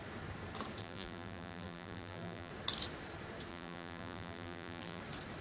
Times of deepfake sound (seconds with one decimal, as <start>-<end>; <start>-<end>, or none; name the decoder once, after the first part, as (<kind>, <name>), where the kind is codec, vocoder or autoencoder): 0.8-2.5 (vocoder, BigVGAN v2); 3.5-5.0